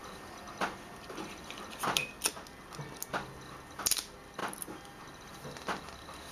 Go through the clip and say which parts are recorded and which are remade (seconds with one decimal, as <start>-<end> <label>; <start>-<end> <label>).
0.0-6.3 recorded